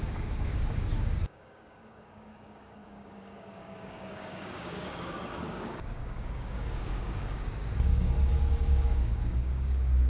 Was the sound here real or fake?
fake